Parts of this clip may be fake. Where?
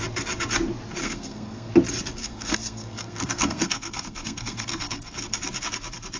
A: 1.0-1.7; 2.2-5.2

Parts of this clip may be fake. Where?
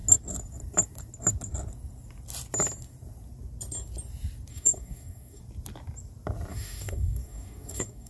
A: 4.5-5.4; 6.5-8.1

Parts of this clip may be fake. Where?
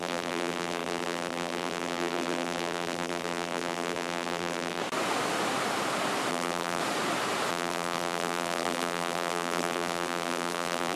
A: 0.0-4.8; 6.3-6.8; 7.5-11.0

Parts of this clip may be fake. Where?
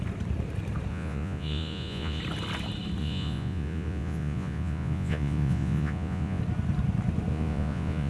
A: 0.9-2.2; 3.0-6.4; 7.3-8.1